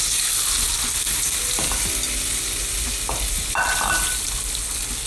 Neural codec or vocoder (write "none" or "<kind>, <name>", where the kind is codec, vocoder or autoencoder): none